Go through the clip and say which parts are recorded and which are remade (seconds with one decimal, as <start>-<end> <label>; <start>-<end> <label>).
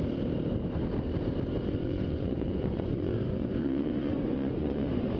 0.0-1.8 recorded; 1.8-5.2 remade